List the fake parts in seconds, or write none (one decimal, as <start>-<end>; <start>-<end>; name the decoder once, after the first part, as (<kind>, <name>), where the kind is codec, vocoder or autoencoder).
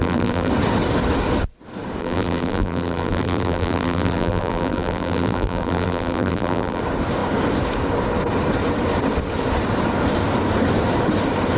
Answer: 0.0-0.5 (vocoder, BigVGAN v2); 2.0-6.8